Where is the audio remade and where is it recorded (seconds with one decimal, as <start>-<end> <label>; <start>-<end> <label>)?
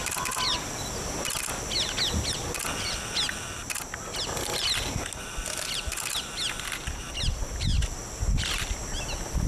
0.0-9.5 recorded